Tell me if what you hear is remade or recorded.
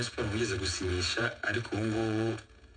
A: remade